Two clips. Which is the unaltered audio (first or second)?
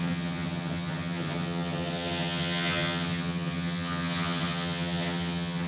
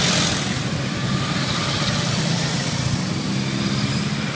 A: second